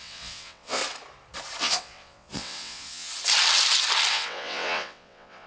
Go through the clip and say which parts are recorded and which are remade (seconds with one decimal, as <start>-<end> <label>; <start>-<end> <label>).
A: 0.0-0.8 remade; 0.8-1.6 recorded; 1.6-3.1 remade; 3.1-4.1 recorded; 4.1-5.5 remade